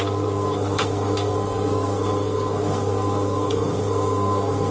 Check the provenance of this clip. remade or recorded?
remade